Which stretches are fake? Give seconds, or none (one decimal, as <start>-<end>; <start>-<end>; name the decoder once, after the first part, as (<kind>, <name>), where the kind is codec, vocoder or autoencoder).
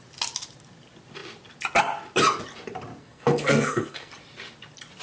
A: 3.0-4.1 (codec, SNAC)